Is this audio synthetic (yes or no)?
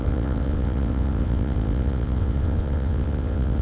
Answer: yes